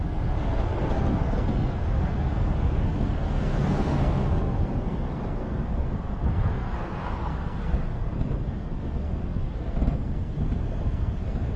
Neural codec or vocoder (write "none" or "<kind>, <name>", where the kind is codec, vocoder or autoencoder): codec, SNAC